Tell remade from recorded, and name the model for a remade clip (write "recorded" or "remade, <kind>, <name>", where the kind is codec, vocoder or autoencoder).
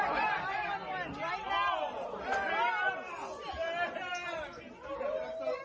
recorded